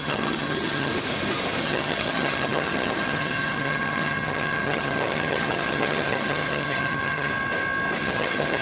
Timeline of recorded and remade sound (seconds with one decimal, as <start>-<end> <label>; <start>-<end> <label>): 0.0-0.9 remade; 0.9-1.6 recorded; 1.6-7.3 remade; 7.3-8.0 recorded; 8.0-8.6 remade